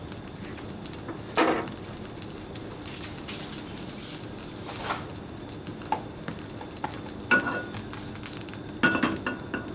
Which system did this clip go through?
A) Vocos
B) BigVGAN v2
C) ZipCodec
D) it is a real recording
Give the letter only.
D